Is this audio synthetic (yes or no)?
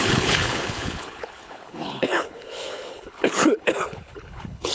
yes